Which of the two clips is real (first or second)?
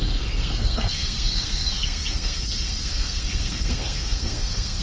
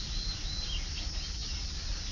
second